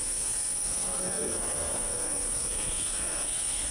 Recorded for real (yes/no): no